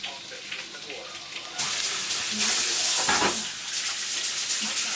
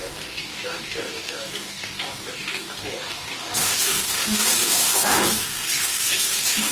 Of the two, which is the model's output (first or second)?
second